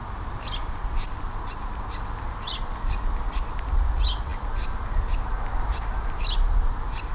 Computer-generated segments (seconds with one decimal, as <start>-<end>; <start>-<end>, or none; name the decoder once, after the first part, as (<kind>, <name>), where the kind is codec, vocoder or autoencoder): 0.0-0.7 (vocoder, BigVGAN v2)